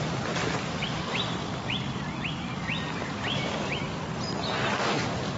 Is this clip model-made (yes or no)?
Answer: yes